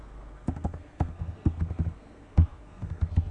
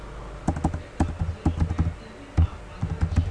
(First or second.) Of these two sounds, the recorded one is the second